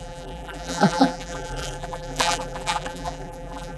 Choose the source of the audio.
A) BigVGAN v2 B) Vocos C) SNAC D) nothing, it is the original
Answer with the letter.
A